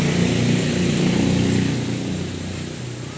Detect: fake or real real